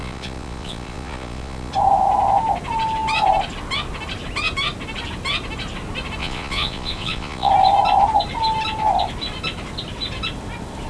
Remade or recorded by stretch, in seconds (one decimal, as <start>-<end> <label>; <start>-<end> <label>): 0.0-1.7 remade; 1.7-6.2 recorded; 6.2-7.5 remade; 7.5-10.9 recorded